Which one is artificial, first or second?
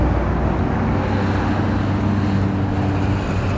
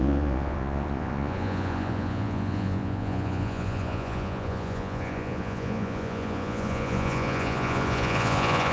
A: second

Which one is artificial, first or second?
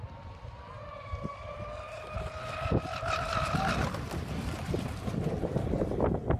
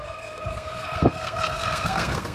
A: second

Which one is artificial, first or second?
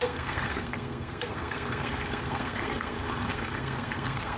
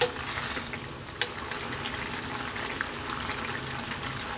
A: first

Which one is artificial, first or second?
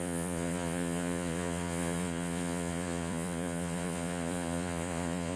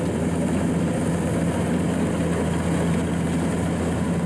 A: first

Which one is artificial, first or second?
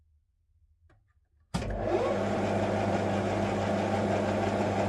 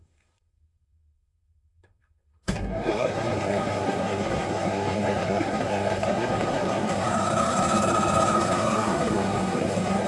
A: second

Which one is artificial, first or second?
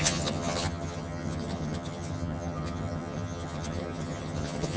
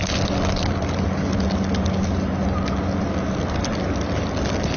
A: first